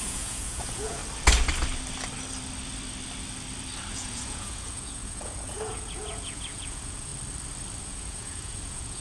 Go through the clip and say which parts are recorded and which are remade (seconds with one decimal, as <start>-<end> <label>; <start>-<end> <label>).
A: 0.0-1.0 remade; 1.0-3.9 recorded; 3.9-7.1 remade; 7.1-7.8 recorded; 7.8-9.0 remade